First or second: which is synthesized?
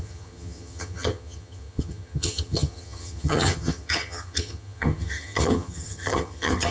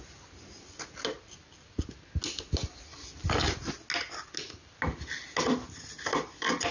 first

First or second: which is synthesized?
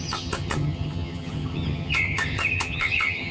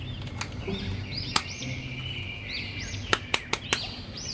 first